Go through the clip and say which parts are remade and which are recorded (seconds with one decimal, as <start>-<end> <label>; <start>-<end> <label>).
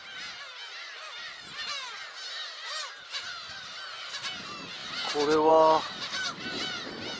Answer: 0.0-0.6 recorded; 0.6-1.7 remade; 1.7-7.2 recorded